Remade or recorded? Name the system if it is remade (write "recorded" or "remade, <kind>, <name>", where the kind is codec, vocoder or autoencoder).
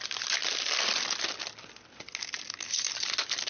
recorded